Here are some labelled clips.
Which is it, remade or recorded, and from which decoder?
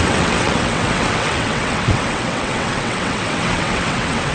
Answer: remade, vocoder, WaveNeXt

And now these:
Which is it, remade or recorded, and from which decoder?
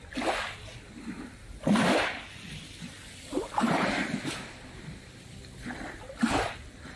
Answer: recorded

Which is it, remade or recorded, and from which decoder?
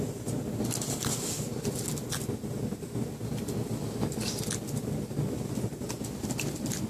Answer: recorded